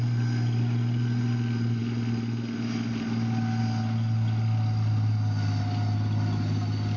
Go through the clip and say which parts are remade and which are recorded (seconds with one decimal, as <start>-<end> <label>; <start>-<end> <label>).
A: 0.0-7.0 recorded